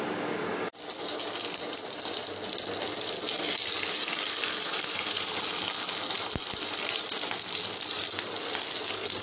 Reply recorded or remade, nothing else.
recorded